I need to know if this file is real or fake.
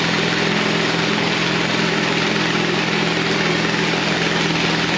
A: real